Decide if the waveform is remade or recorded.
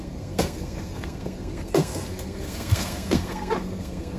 remade